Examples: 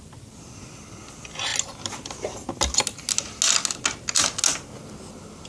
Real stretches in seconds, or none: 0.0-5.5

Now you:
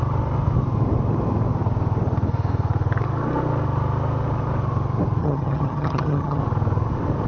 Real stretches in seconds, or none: 0.0-5.2; 6.4-7.3

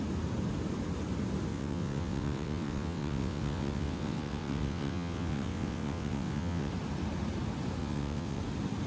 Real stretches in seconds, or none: 0.0-1.5; 6.7-7.8; 8.4-8.9